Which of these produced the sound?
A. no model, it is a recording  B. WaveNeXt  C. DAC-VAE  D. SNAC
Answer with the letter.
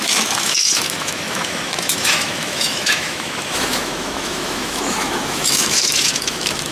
C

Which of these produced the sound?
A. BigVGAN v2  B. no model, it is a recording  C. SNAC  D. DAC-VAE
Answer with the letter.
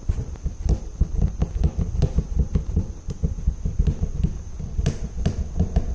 B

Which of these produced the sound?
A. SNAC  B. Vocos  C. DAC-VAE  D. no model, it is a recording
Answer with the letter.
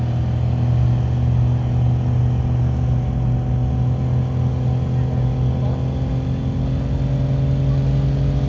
D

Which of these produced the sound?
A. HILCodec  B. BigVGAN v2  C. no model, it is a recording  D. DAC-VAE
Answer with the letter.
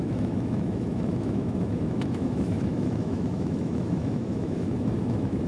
D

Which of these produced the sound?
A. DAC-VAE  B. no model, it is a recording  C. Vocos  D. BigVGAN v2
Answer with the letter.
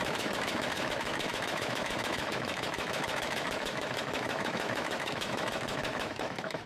A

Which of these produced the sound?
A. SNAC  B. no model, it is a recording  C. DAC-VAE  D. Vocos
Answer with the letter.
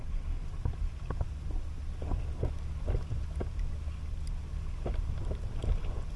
B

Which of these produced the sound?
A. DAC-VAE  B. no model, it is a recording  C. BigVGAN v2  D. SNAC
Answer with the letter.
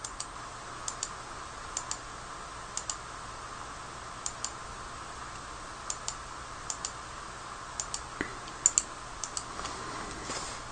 B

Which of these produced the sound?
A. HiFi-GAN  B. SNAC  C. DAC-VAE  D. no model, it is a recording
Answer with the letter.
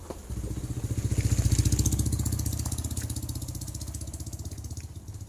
D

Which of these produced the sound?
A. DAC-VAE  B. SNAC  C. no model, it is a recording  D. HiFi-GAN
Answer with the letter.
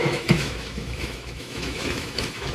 A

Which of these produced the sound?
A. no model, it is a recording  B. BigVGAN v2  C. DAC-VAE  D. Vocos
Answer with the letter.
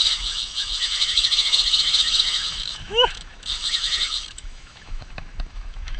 C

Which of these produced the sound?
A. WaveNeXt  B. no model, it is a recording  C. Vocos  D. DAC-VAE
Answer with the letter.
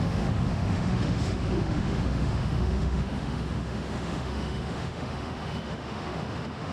D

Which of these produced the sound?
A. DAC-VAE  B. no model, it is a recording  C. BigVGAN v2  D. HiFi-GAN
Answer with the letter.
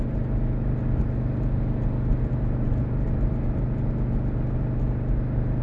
B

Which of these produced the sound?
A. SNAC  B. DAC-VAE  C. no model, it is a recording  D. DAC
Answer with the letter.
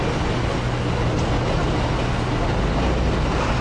C